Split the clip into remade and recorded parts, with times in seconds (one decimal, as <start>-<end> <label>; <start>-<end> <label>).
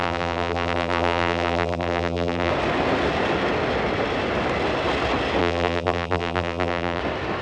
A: 0.0-2.5 remade; 2.5-5.4 recorded; 5.4-7.0 remade; 7.0-7.4 recorded